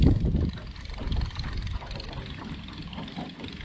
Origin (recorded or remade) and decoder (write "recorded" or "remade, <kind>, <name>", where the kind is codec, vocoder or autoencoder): recorded